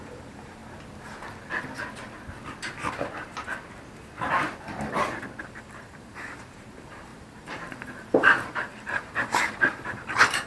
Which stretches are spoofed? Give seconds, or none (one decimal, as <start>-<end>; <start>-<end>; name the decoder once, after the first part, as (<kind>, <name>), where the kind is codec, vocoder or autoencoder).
0.0-0.6 (vocoder, BigVGAN v2); 5.4-10.5